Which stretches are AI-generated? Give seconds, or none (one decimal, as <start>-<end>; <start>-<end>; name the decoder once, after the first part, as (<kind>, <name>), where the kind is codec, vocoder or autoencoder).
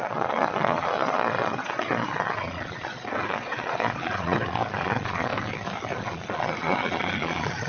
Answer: 0.0-5.3 (vocoder, Vocos); 6.0-7.7